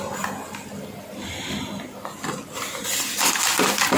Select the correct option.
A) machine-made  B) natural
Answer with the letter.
B